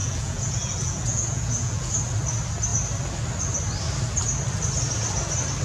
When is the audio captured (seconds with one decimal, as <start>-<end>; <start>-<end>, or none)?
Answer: 1.9-5.6